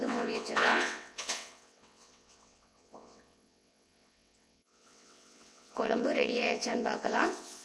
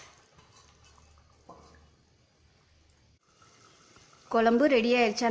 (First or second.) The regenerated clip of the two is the first